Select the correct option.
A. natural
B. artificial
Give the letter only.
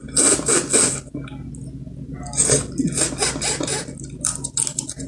A